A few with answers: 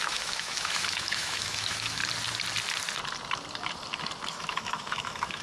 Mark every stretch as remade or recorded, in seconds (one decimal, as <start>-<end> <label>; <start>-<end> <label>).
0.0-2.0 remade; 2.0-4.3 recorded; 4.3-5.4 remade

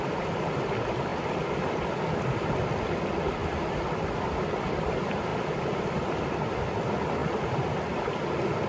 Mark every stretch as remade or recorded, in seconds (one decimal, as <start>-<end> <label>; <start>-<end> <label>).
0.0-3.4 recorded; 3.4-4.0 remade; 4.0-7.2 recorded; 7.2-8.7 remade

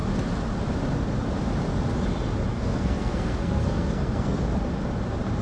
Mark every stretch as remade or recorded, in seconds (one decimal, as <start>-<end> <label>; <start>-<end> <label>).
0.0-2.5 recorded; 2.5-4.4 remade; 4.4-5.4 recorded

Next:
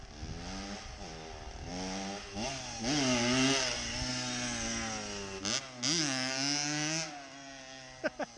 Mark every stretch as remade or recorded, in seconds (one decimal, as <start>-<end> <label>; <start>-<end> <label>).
0.0-8.4 recorded